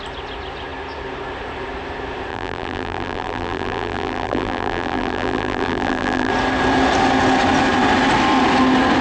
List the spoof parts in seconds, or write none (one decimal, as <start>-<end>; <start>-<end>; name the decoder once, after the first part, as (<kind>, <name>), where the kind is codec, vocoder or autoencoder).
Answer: 2.3-6.3 (vocoder, BigVGAN v2)